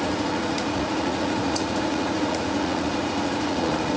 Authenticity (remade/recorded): remade